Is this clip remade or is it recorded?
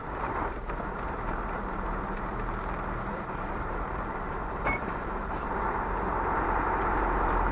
remade